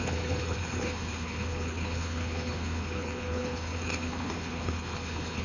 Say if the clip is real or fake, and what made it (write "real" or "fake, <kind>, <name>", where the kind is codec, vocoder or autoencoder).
fake, codec, HILCodec